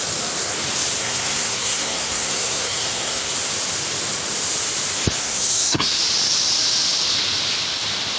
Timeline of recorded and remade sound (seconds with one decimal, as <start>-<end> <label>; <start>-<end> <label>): 0.0-1.0 recorded; 1.0-3.3 remade; 3.3-5.2 recorded; 5.2-6.0 remade; 6.0-8.2 recorded